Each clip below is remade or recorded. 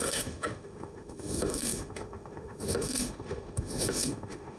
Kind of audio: remade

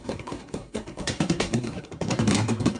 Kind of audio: remade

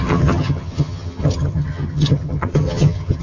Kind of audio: remade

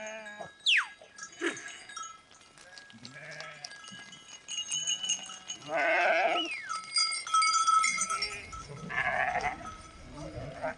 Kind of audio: recorded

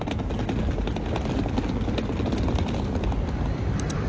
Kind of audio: recorded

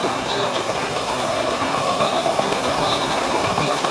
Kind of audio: remade